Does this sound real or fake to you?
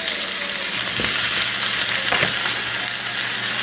real